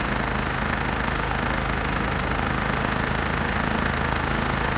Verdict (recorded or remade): remade